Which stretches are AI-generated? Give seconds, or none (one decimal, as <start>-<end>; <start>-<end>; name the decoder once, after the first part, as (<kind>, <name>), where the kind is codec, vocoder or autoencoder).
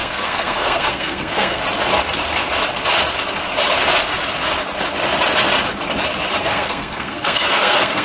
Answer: 0.0-1.6 (codec, SNAC); 6.4-8.0